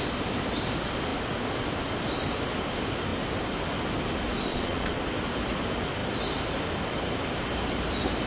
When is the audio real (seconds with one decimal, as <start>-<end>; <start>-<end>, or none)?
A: 0.0-4.5; 5.0-8.3